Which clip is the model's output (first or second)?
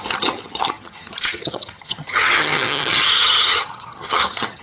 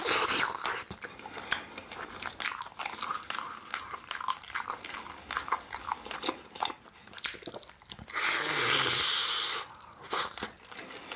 first